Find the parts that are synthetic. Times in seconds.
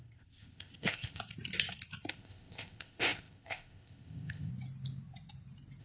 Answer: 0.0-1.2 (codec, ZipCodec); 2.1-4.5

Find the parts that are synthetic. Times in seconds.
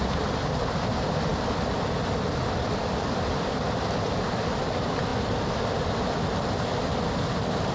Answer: none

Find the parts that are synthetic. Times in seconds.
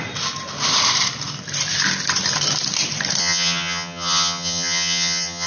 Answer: 3.2-5.5 (vocoder, HiFi-GAN)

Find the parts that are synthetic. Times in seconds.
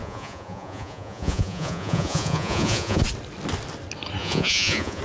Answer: 0.0-3.0 (vocoder, Vocos); 4.2-5.0